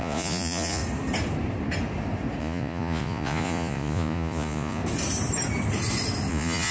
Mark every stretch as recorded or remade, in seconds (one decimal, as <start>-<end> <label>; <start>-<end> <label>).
0.0-0.8 remade; 0.8-2.4 recorded; 2.4-4.8 remade; 4.8-6.3 recorded; 6.3-6.7 remade